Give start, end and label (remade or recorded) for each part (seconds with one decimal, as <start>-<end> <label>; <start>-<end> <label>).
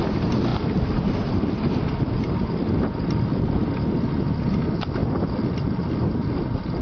0.0-0.5 recorded; 0.5-2.1 remade; 2.1-3.3 recorded; 3.3-3.8 remade; 3.8-5.0 recorded; 5.0-6.8 remade